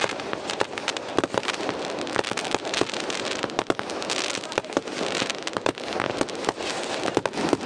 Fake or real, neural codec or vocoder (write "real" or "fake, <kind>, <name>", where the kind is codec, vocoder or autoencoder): real